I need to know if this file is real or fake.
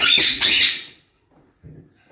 fake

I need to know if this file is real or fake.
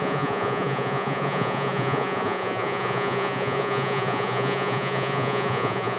fake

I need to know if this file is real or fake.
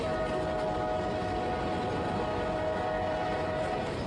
real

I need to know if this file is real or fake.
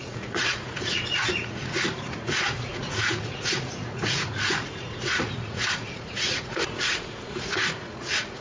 fake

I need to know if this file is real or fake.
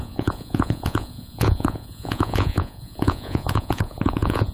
fake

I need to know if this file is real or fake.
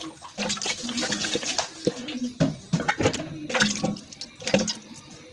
real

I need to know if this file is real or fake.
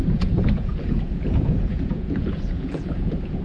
fake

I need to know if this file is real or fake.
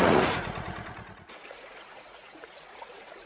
fake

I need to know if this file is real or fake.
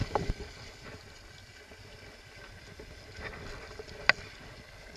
real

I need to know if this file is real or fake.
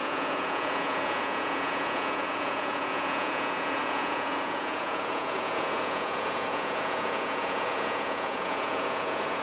fake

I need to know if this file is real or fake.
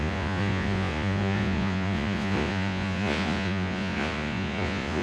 fake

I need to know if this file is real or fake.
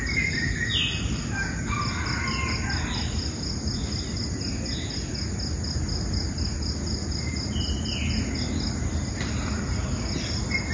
real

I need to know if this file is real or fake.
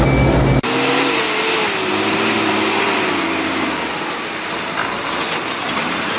real